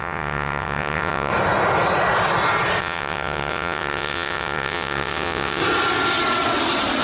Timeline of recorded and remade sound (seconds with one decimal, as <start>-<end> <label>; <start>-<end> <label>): 0.0-1.3 remade; 1.3-2.8 recorded; 2.8-5.6 remade; 5.6-7.0 recorded